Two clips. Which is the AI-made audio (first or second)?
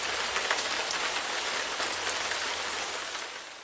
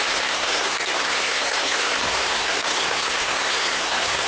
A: second